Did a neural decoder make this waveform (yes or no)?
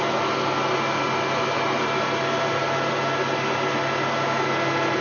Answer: no